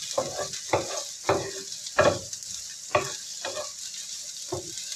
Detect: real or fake real